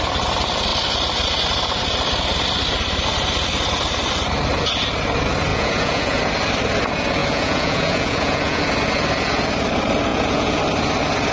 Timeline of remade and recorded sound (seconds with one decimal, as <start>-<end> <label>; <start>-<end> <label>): 0.0-5.5 recorded; 5.5-6.2 remade; 6.2-7.2 recorded; 7.2-8.6 remade; 8.6-10.1 recorded; 10.1-10.6 remade; 10.6-11.3 recorded